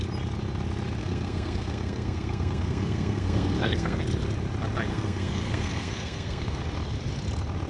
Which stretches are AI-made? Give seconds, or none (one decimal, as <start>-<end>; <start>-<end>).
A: 1.0-4.0; 4.9-6.6